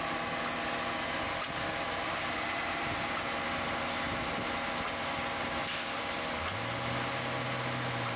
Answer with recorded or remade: recorded